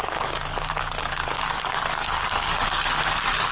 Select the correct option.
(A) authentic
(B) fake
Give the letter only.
B